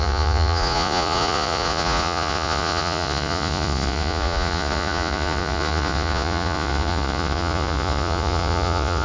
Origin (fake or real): fake